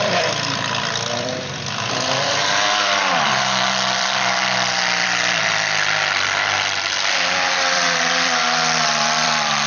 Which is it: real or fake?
fake